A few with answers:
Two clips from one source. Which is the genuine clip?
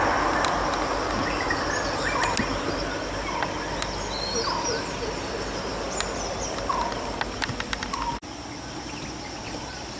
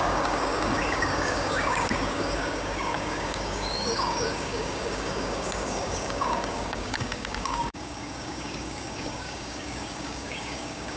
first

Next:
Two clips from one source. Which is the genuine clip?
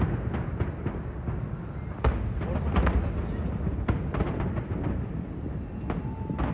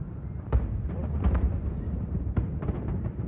first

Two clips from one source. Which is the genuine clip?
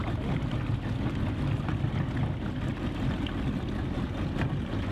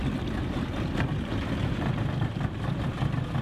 first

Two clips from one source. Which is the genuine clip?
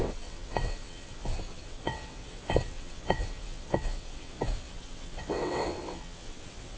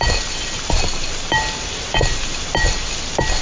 second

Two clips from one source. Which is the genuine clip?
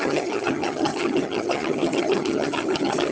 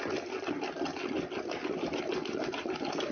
second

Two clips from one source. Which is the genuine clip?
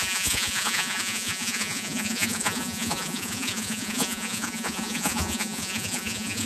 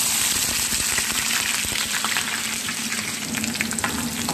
second